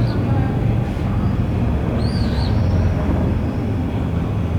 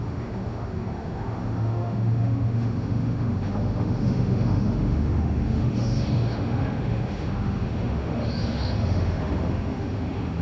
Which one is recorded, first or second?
first